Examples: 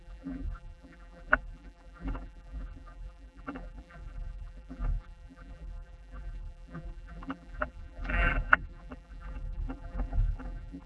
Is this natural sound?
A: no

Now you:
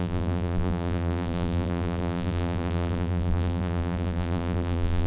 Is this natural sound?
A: no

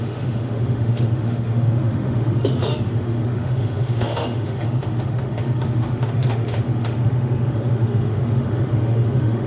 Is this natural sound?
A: no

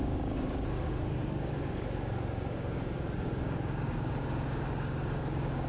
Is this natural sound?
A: no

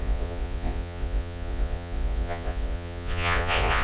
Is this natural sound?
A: no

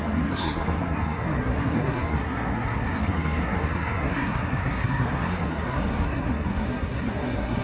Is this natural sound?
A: no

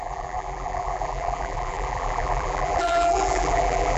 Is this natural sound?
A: no